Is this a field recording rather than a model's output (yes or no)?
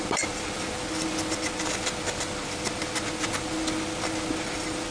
yes